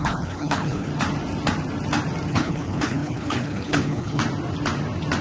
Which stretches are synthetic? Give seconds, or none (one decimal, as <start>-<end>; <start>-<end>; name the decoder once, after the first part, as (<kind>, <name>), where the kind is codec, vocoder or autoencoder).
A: 0.0-0.9 (codec, HILCodec); 2.3-4.2